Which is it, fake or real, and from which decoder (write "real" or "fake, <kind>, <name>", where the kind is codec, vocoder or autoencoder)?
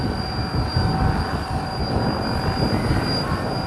real